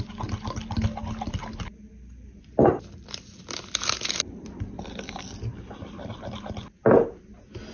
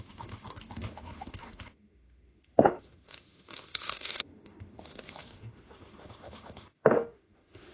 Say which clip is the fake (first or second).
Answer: second